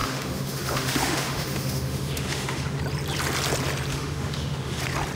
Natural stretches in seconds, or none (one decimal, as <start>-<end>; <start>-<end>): 2.8-3.9; 4.8-5.2